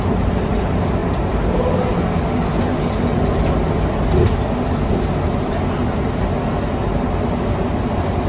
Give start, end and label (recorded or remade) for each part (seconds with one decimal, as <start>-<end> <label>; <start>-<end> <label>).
0.0-8.3 recorded